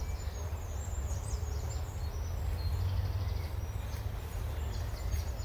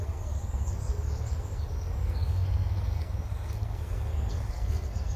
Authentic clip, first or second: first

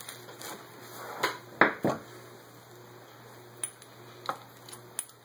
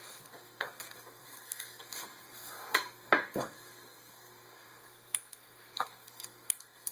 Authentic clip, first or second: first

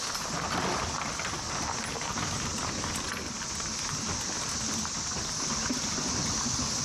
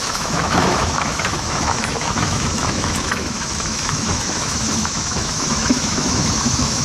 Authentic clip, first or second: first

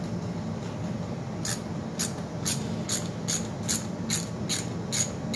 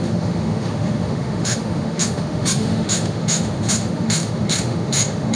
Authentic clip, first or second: first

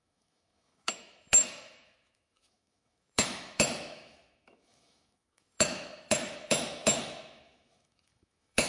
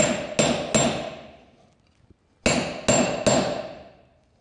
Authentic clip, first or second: second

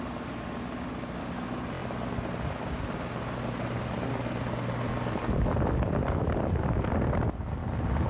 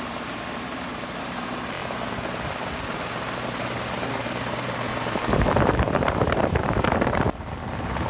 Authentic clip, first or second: first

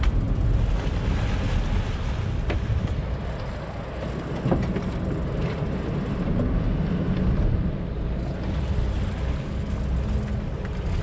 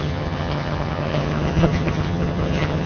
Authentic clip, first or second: first